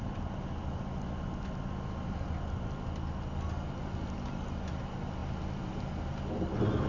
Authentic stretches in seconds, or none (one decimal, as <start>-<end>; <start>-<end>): 0.0-6.9

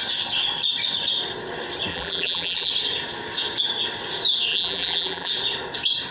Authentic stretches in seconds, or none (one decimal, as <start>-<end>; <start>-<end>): 0.0-1.9; 2.7-4.5; 5.3-6.1

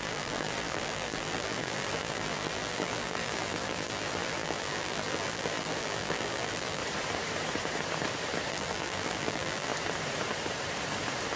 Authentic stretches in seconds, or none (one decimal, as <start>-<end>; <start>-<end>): 6.8-8.5; 9.7-11.4

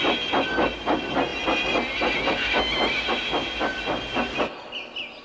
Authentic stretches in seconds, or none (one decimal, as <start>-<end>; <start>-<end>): 0.0-5.2